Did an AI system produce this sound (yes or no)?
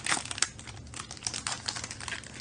no